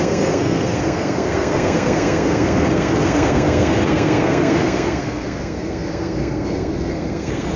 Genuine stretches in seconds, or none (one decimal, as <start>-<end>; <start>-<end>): none